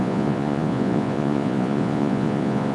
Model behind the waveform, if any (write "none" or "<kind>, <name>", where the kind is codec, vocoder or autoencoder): vocoder, Vocos